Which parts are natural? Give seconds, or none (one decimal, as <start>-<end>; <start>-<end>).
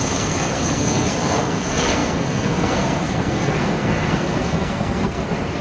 none